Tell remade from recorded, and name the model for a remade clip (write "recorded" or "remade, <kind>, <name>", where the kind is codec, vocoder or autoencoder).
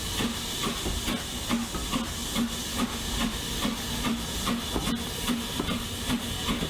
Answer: recorded